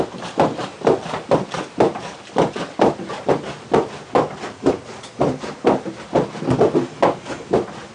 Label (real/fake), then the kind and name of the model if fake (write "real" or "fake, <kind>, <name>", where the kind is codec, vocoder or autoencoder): real